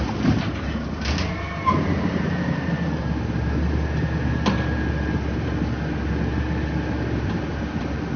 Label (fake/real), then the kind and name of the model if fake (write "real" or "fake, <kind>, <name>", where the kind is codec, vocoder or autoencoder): real